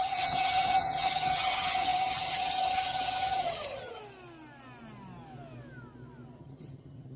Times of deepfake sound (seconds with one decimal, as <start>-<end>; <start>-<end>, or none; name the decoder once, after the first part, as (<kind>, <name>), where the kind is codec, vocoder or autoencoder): 0.0-4.0 (vocoder, HiFi-GAN); 6.4-7.2